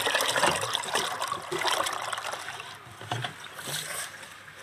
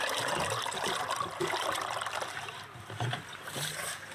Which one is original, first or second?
first